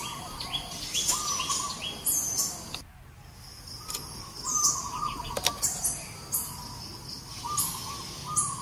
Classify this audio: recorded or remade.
recorded